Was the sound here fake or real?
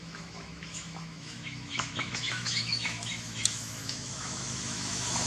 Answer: fake